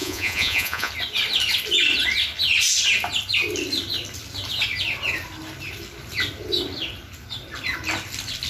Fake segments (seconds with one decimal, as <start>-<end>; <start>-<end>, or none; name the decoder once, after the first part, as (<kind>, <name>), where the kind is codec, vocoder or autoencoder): 0.0-0.9 (vocoder, Vocos)